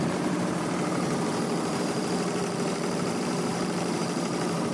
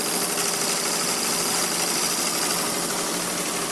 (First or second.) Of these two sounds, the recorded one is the second